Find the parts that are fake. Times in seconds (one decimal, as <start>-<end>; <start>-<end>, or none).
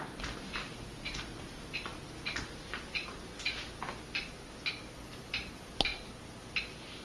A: none